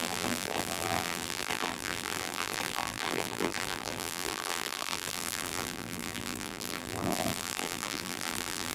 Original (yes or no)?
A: no